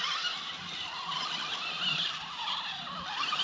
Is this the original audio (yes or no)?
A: yes